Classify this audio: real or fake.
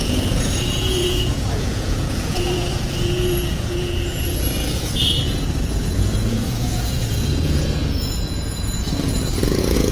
fake